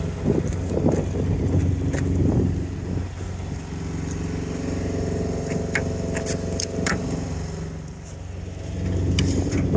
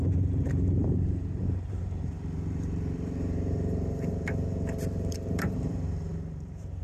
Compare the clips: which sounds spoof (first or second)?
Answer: second